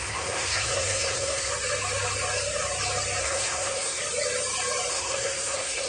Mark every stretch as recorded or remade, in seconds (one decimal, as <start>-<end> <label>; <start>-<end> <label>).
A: 0.0-1.5 remade; 1.5-3.2 recorded; 3.2-4.0 remade; 4.0-4.9 recorded; 4.9-5.9 remade